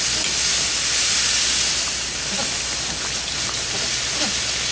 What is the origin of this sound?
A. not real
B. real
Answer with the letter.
B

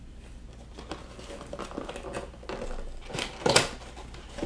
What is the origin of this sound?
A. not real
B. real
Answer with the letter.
B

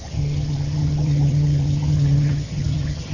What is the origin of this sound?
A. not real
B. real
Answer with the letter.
A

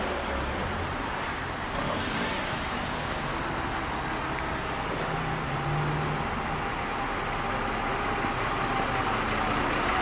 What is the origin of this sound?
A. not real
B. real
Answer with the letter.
B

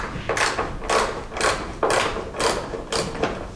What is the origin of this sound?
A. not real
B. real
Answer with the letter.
B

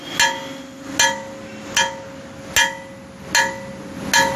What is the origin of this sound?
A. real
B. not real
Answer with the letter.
A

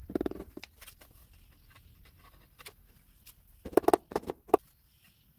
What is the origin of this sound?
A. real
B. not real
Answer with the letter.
A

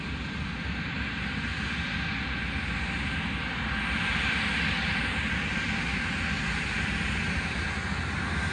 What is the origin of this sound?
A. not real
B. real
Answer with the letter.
B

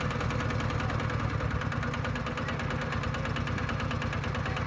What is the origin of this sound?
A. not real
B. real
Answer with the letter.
B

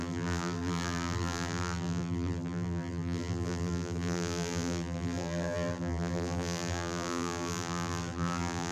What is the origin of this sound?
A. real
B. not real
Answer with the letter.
B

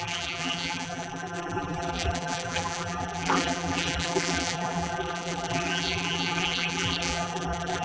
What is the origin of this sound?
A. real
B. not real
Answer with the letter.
B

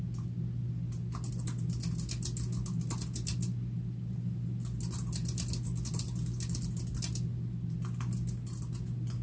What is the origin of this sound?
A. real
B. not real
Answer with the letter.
A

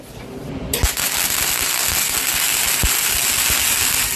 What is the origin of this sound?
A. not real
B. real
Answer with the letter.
B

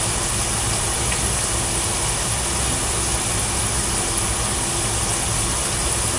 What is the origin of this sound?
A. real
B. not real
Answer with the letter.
A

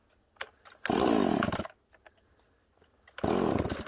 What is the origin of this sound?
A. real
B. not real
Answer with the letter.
A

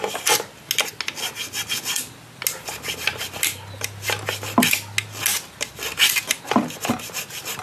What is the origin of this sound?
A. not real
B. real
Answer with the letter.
B